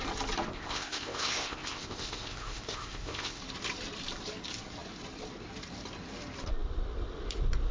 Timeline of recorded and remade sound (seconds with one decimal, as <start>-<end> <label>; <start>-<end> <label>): 0.0-0.5 recorded; 0.5-3.4 remade; 3.4-7.7 recorded